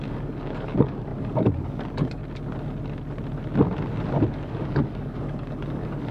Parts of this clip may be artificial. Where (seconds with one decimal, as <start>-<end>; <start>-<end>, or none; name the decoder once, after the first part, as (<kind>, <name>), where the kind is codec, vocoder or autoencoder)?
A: 0.0-2.2 (codec, DAC); 4.3-6.1